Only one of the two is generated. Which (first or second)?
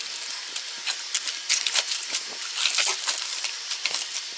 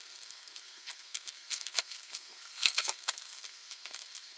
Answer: second